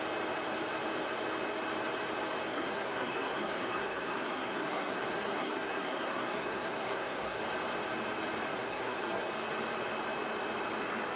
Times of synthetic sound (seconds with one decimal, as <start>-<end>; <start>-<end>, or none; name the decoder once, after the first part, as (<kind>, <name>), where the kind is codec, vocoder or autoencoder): 2.5-7.4 (codec, SNAC); 8.5-9.3